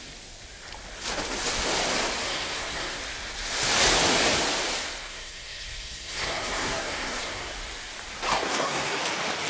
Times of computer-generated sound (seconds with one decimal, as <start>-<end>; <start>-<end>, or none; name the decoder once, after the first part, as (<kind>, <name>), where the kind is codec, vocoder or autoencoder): 2.2-3.0 (codec, SNAC); 5.0-7.5; 8.3-9.0